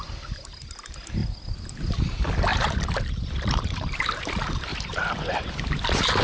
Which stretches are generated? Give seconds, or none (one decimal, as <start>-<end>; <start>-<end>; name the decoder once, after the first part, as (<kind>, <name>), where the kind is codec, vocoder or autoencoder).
2.5-4.3 (vocoder, BigVGAN v2); 4.7-5.4